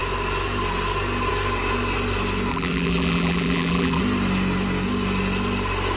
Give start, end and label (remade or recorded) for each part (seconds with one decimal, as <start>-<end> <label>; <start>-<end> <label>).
0.0-2.5 recorded; 2.5-4.0 remade; 4.0-6.0 recorded